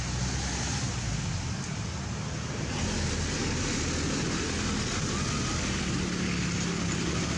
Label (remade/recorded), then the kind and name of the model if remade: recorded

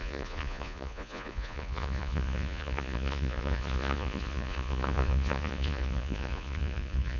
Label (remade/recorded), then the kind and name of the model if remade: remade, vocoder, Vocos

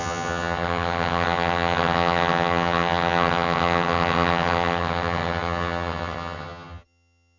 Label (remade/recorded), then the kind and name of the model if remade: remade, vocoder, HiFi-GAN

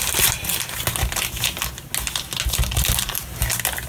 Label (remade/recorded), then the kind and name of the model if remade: recorded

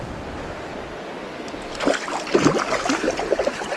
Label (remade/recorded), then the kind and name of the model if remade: recorded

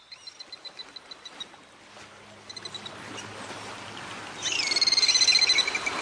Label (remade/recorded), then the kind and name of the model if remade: recorded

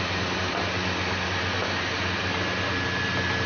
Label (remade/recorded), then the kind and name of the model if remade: recorded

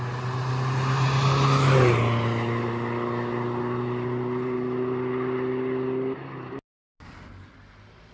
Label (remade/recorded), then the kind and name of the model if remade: recorded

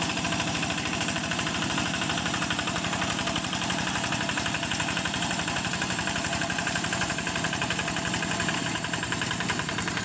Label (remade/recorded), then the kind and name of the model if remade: remade, vocoder, BigVGAN v2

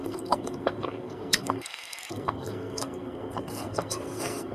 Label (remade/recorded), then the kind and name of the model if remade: remade, codec, SNAC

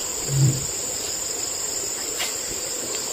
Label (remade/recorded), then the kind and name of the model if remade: remade, vocoder, BigVGAN v2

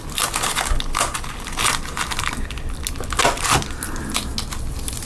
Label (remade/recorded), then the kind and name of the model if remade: recorded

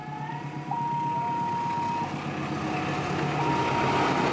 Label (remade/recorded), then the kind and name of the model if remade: recorded